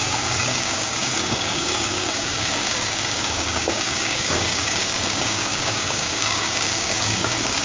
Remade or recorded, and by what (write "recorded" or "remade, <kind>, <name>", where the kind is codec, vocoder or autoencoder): remade, codec, DAC